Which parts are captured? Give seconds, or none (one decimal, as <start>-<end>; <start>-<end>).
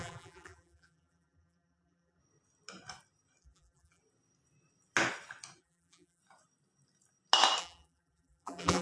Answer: 2.2-3.4; 4.0-5.6; 6.2-7.6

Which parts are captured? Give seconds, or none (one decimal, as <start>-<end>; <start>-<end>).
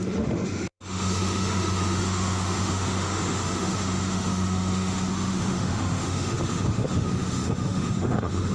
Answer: none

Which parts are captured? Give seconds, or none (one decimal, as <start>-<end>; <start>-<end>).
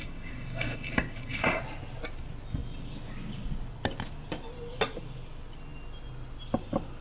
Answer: 1.6-7.0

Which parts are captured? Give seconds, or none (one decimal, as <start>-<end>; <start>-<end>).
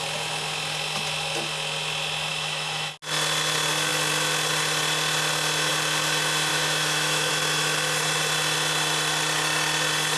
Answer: 0.0-2.3; 2.9-6.5; 7.3-10.2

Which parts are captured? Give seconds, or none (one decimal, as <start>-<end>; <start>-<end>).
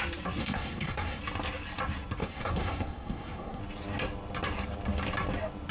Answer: 0.0-0.4; 1.2-2.2; 3.6-5.7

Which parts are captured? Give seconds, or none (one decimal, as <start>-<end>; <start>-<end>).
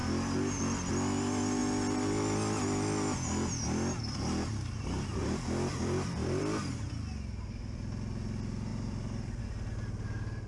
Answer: 0.0-5.2; 6.9-8.7; 9.4-10.5